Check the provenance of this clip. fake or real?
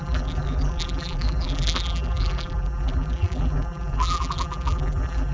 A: fake